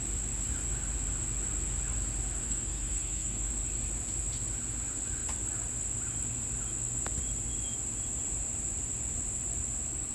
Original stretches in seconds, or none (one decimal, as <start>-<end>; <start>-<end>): 0.0-2.4; 3.5-10.1